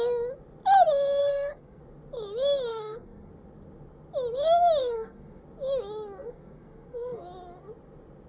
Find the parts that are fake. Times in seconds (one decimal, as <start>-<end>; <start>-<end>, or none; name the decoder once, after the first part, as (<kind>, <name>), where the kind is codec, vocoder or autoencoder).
1.2-1.8 (codec, SNAC); 2.7-3.3; 4.8-5.4; 6.2-7.2